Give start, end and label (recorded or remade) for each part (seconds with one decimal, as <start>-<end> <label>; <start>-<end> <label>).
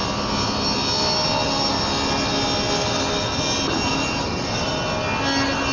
0.0-3.9 recorded; 3.9-4.9 remade; 4.9-5.7 recorded